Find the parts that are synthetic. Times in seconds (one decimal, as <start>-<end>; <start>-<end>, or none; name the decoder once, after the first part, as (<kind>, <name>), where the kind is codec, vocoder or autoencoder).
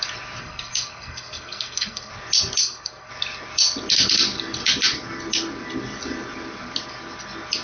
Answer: 0.4-2.1 (codec, SNAC); 2.6-3.1